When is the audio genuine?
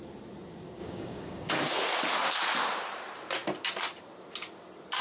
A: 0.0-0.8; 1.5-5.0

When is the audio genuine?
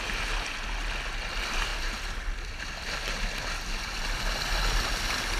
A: 0.0-5.4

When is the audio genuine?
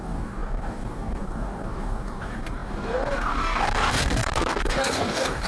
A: none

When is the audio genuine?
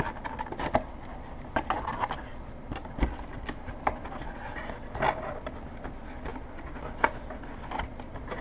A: 0.0-8.4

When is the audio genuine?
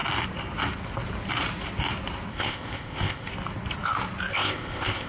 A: 0.0-2.3; 3.3-4.3